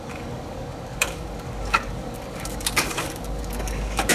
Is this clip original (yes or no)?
no